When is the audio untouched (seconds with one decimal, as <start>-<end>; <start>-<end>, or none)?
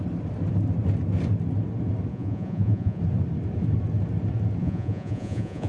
0.0-2.1; 3.0-4.6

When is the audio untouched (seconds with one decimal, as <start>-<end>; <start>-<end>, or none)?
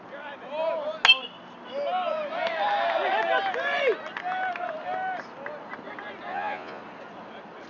0.0-6.3; 6.8-7.7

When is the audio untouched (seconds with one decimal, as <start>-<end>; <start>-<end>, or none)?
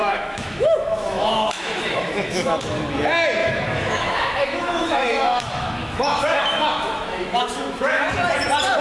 2.6-3.4; 8.1-8.8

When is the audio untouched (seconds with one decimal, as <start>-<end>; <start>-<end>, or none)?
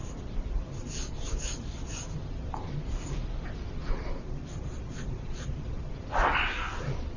0.0-7.2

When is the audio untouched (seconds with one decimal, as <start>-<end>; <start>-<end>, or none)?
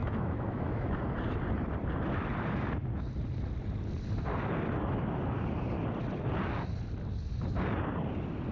1.0-8.5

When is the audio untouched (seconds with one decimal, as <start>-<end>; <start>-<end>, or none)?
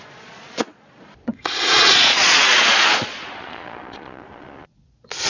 none